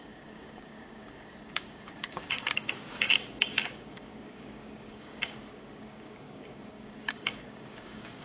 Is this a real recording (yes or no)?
no